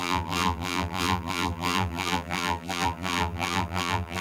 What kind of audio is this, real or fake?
fake